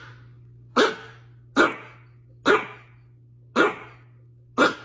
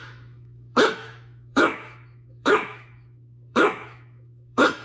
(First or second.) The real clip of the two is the first